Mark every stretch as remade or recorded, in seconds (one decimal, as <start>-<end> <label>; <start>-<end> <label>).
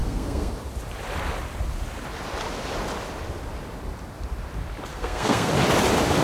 0.0-0.5 remade; 0.5-4.9 recorded; 4.9-5.5 remade; 5.5-6.2 recorded